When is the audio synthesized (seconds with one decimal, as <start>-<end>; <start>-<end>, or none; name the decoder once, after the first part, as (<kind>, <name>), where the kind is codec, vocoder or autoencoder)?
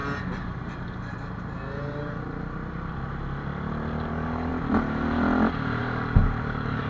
4.1-4.5 (codec, DAC); 5.8-6.9